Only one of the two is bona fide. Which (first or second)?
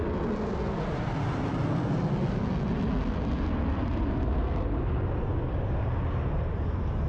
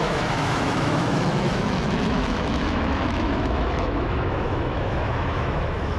first